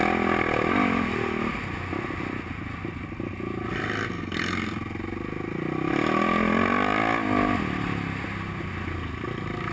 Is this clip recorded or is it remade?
recorded